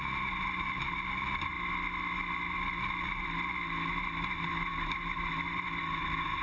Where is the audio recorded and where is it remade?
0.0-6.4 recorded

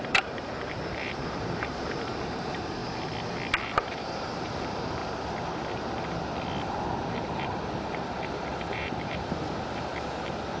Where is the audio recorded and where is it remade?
0.0-2.8 remade; 2.8-3.6 recorded; 3.6-5.0 remade; 5.0-7.0 recorded; 7.0-10.6 remade

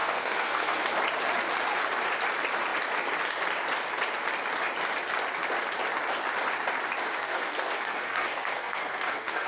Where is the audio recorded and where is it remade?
0.0-0.8 remade; 0.8-7.1 recorded; 7.1-9.5 remade

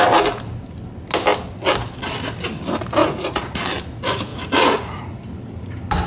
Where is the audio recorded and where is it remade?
0.0-3.0 recorded; 3.0-3.6 remade; 3.6-4.3 recorded; 4.3-5.0 remade; 5.0-6.1 recorded